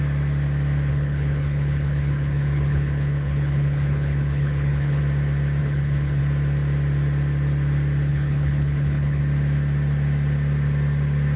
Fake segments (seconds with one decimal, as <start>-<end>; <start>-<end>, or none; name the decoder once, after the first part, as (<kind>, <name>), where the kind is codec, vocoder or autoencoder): 0.9-5.0 (codec, HILCodec); 5.6-6.2; 8.1-9.2